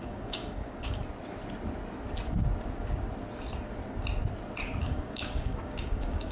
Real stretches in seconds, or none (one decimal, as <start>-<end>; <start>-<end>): 1.0-4.8